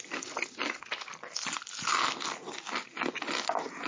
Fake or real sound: real